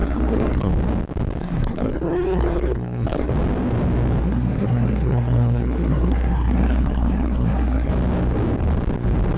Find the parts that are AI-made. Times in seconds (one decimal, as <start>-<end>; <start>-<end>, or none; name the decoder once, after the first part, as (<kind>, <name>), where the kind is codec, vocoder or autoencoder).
0.0-0.7 (codec, SNAC); 1.4-3.3; 4.2-7.9